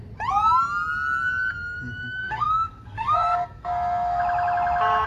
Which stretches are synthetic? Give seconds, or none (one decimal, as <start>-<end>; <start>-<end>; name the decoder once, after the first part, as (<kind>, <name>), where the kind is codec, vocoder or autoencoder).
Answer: 2.2-4.2 (codec, SNAC)

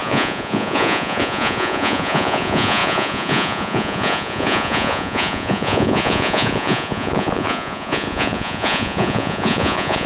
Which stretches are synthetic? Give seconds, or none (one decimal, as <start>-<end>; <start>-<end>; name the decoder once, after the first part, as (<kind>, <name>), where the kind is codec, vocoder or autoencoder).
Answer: 0.0-10.1 (vocoder, Vocos)

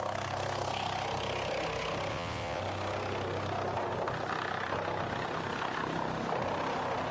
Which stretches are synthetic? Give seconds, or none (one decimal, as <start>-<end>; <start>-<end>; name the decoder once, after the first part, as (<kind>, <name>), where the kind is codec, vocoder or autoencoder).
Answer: 2.1-2.6 (vocoder, WaveNeXt)

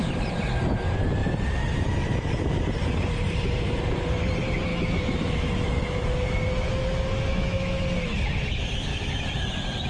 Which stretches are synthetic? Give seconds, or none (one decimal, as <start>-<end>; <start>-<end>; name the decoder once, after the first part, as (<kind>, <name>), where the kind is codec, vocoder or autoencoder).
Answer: 4.7-7.8 (autoencoder, DAC-VAE); 8.9-9.5